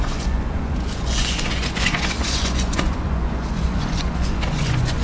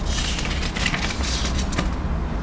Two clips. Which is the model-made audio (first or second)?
first